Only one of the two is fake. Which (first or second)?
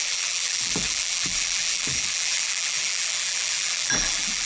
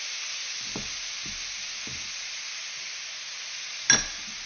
first